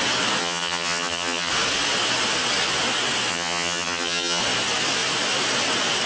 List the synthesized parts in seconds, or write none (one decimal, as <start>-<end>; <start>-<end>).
0.4-1.5; 3.3-4.4

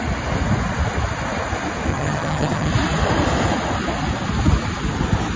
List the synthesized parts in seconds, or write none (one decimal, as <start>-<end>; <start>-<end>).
1.9-2.7

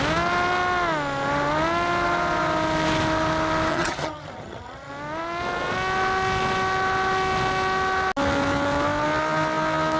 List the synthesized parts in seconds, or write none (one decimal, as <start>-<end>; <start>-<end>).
3.7-4.9

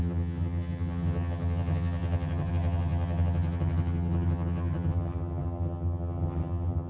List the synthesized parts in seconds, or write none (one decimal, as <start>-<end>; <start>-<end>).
0.0-6.9

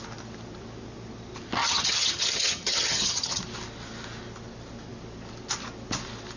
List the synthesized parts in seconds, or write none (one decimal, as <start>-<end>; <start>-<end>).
1.6-3.4

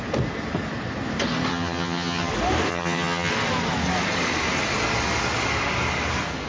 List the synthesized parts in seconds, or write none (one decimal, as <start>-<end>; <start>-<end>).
1.5-2.3; 2.7-3.3

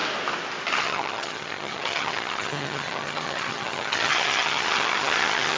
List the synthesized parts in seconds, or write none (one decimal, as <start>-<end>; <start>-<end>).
0.8-5.6

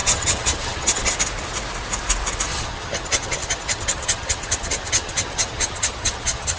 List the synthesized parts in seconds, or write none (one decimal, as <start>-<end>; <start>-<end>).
0.0-1.1; 2.5-6.6